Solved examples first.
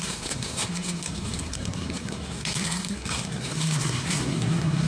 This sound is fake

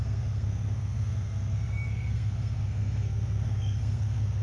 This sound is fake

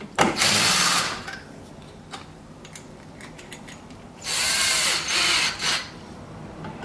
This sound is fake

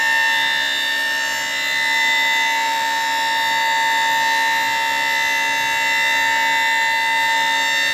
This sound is real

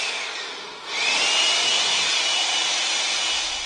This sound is real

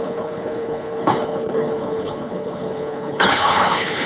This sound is fake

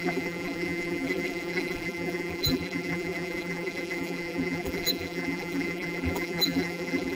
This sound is fake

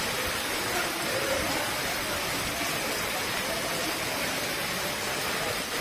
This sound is fake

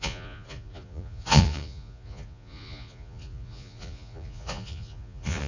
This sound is fake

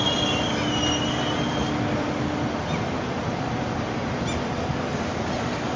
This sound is real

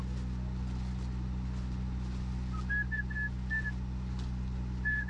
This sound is real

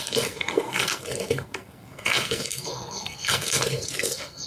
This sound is fake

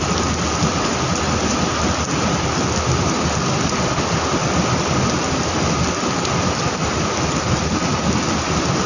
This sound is real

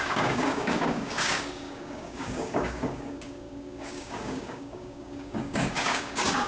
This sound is fake